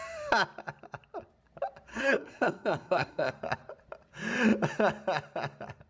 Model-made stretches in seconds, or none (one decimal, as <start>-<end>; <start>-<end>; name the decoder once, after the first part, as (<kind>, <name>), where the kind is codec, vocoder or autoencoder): 1.9-3.3 (codec, SNAC)